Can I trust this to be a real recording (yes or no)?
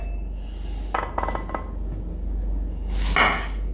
yes